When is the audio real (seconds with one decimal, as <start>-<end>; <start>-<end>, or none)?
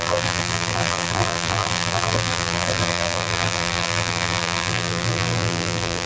none